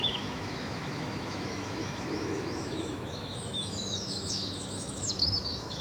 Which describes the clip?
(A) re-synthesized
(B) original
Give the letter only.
A